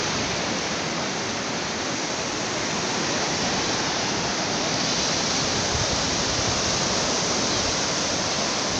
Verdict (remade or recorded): recorded